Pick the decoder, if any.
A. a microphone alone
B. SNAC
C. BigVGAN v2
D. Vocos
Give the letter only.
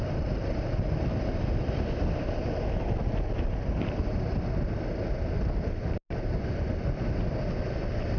A